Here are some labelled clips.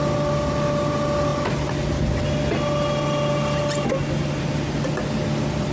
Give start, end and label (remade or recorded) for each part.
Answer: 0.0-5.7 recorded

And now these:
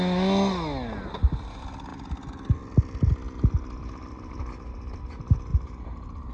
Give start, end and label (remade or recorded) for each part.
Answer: 0.0-5.5 recorded; 5.5-6.3 remade

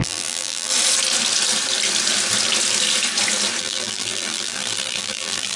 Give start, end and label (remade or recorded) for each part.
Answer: 0.0-0.7 remade; 0.7-3.6 recorded; 3.6-5.6 remade

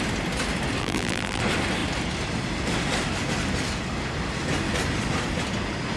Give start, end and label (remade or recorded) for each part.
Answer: 0.0-0.8 recorded; 0.8-1.4 remade; 1.4-6.0 recorded

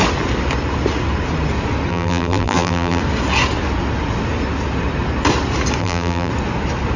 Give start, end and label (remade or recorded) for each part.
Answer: 0.0-1.9 recorded; 1.9-3.0 remade; 3.0-5.8 recorded; 5.8-6.3 remade; 6.3-7.0 recorded

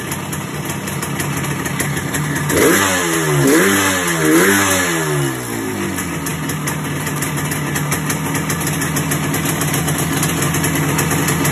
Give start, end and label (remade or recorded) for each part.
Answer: 0.0-11.5 recorded

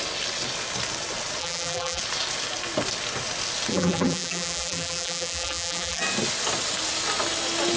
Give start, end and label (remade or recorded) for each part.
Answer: 0.0-1.4 recorded; 1.4-2.0 remade; 2.0-3.7 recorded; 3.7-6.0 remade; 6.0-7.8 recorded

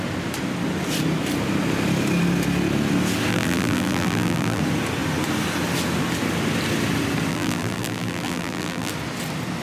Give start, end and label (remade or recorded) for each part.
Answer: 0.0-3.3 recorded; 3.3-4.6 remade; 4.6-7.3 recorded; 7.3-8.9 remade; 8.9-9.6 recorded